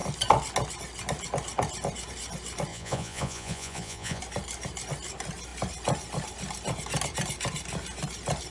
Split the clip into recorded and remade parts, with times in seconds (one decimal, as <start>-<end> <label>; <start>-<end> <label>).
0.0-2.7 recorded; 2.7-4.2 remade; 4.2-8.5 recorded